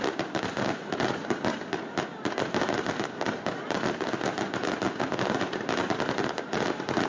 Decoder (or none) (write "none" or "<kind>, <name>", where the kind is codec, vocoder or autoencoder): none